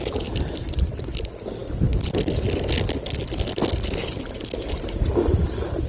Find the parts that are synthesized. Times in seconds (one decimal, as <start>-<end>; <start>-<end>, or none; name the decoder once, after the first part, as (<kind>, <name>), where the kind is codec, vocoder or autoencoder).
none